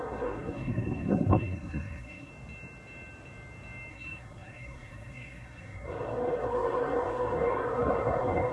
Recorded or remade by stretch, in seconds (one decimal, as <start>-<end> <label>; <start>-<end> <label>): 0.0-2.3 remade; 2.3-3.9 recorded; 3.9-8.5 remade